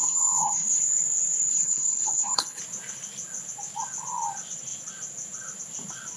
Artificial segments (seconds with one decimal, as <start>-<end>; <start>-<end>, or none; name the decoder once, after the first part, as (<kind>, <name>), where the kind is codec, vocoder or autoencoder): 0.0-0.8 (codec, HILCodec); 1.5-2.6